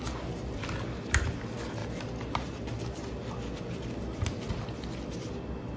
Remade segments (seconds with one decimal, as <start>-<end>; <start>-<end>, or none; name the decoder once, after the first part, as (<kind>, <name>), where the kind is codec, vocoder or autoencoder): none